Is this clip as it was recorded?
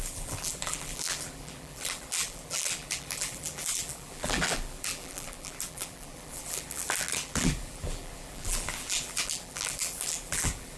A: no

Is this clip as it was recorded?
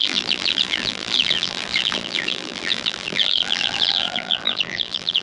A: no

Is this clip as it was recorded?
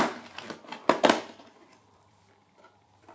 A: no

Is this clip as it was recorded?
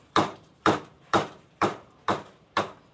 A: no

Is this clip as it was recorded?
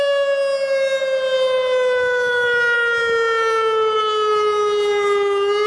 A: yes